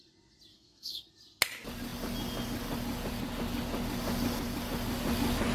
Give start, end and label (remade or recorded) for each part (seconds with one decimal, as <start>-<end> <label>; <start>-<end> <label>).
0.0-0.5 recorded; 0.5-1.1 remade; 1.1-5.5 recorded